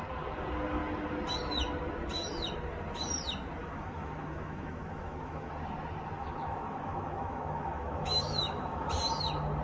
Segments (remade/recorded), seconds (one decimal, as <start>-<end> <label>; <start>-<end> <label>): 0.0-3.6 recorded; 3.6-5.5 remade; 5.5-6.2 recorded; 6.2-8.9 remade; 8.9-9.6 recorded